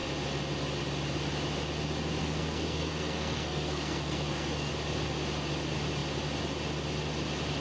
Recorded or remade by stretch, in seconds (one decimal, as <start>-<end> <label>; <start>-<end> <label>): 0.0-2.2 recorded; 2.2-4.7 remade; 4.7-7.6 recorded